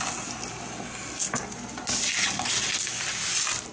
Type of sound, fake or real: real